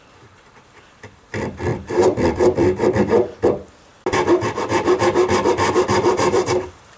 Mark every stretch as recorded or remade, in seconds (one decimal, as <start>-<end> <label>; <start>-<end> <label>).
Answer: 0.0-3.9 remade; 3.9-5.5 recorded; 5.5-7.0 remade